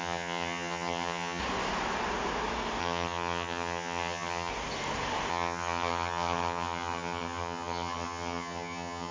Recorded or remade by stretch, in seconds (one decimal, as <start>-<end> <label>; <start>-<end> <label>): 0.0-1.4 remade; 1.4-2.8 recorded; 2.8-4.5 remade; 4.5-5.3 recorded; 5.3-9.1 remade